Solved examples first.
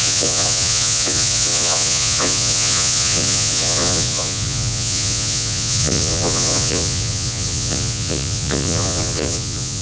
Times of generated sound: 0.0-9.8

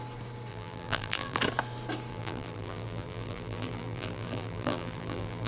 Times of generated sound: 0.5-1.4; 2.1-5.5

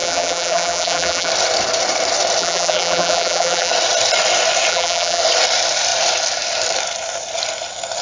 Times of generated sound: 0.0-1.3; 2.4-3.7; 4.7-5.2

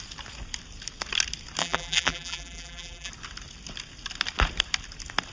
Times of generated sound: 1.6-3.1

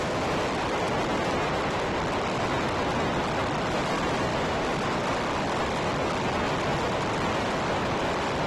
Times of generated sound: none